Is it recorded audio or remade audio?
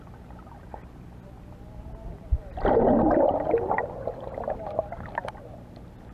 recorded